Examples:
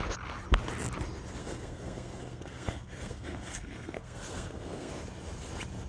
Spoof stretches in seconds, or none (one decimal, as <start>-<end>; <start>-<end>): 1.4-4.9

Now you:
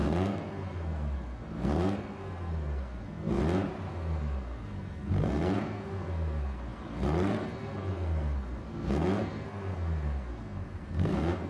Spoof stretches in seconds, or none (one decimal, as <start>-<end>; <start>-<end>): 0.0-3.4; 3.9-11.5

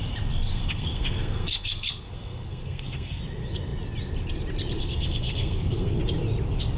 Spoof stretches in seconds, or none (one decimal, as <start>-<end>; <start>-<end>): 0.5-3.2; 4.8-6.0

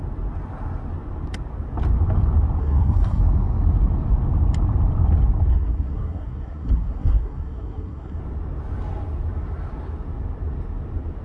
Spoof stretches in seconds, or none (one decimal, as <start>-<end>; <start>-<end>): 2.6-3.2; 5.5-8.2